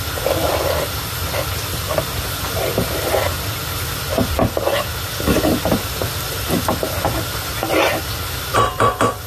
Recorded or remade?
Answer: recorded